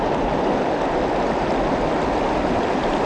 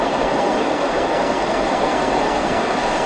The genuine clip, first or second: first